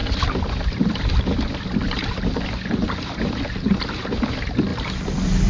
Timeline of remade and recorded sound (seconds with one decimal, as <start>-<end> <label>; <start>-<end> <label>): 0.0-5.5 recorded